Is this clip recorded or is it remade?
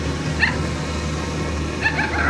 recorded